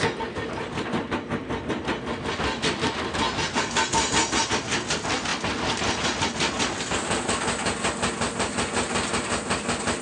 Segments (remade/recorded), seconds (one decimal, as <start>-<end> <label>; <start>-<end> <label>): 0.0-10.0 recorded